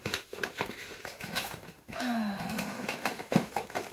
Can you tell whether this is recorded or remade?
remade